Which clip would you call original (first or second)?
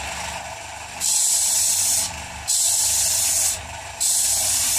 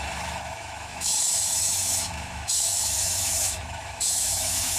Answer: first